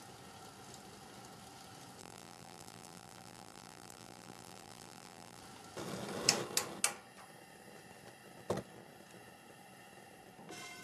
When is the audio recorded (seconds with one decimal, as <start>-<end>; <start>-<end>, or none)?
0.0-2.0; 5.4-10.8